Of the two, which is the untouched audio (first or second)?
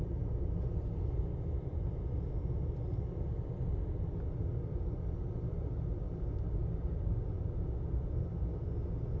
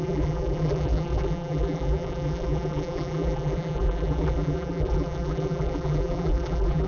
first